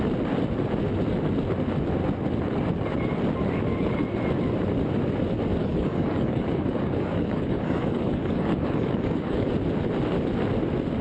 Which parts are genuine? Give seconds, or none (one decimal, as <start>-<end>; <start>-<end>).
0.0-5.6; 9.5-11.0